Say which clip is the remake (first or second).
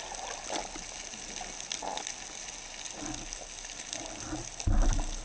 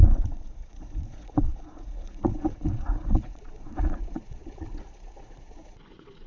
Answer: second